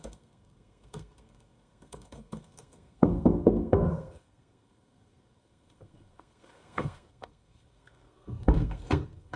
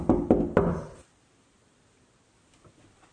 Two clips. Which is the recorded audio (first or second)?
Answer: second